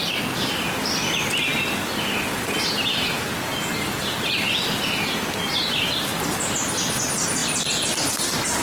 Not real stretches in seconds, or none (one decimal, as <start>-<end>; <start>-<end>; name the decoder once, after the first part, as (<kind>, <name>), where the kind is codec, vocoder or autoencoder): none